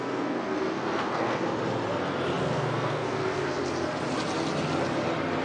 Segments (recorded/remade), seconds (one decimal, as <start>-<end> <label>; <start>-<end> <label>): 0.0-1.5 remade; 1.5-2.4 recorded; 2.4-3.6 remade; 3.6-5.4 recorded